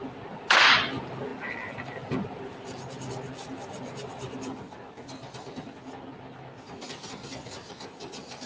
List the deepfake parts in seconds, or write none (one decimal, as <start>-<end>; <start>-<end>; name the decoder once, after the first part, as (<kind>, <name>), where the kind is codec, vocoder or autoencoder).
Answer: none